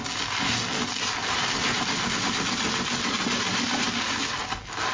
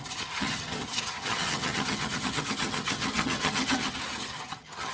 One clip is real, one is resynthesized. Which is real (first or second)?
first